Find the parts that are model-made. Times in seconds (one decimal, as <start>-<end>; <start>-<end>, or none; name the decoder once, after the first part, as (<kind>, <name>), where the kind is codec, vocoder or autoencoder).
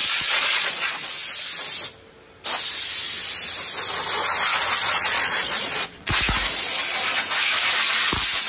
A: 0.0-1.1 (vocoder, Vocos); 4.8-6.1